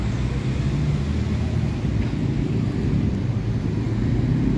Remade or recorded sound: recorded